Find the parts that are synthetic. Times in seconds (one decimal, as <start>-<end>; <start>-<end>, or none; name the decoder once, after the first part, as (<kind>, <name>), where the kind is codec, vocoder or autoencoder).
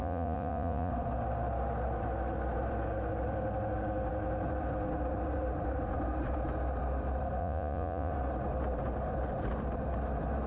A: 0.0-0.9 (vocoder, Vocos); 7.4-8.1